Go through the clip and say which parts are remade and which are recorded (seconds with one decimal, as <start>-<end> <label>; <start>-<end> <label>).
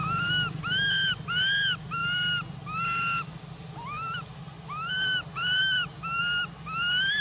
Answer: 0.0-7.2 recorded